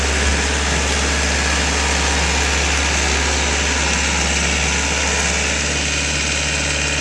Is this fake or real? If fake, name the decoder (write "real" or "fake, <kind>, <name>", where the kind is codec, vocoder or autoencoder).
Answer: real